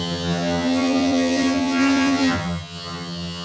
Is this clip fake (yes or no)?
yes